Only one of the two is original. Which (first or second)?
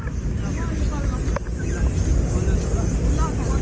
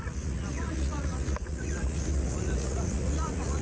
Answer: first